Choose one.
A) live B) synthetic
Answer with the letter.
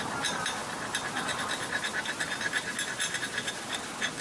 A